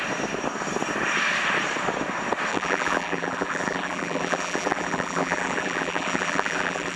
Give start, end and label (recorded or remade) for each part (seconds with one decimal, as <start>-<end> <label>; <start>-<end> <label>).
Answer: 0.0-2.5 recorded; 2.5-7.0 remade